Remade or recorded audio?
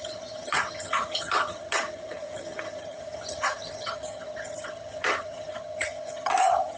remade